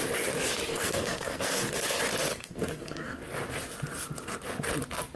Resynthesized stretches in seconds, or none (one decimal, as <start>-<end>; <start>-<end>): 0.7-1.6; 2.3-3.2